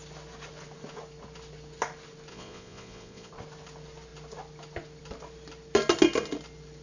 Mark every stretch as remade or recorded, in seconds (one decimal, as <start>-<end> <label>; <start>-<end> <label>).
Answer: 0.0-2.3 recorded; 2.3-3.3 remade; 3.3-6.8 recorded